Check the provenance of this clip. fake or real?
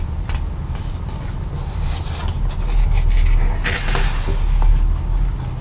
real